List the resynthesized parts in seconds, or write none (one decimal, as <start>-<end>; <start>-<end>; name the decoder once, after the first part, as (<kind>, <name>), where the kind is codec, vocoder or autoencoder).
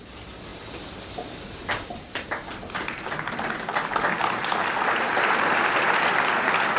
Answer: none